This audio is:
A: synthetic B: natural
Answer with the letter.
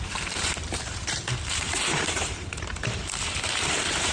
A